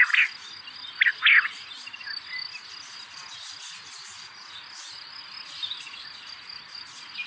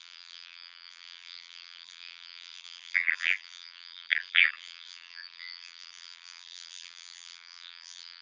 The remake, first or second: second